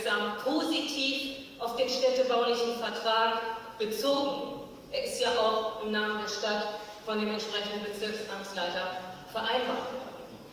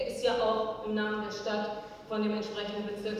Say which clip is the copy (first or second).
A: first